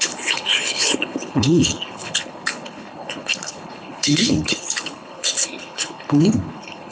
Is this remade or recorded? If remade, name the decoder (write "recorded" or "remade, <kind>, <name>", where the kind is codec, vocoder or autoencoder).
remade, codec, HILCodec